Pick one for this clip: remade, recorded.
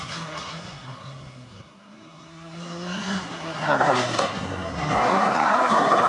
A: remade